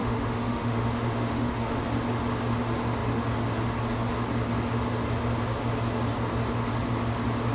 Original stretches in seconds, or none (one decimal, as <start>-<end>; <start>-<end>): 1.8-7.5